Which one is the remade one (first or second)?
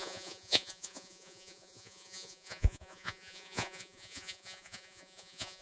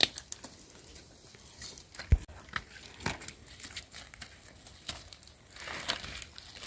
first